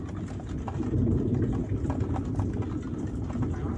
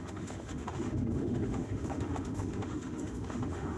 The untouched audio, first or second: first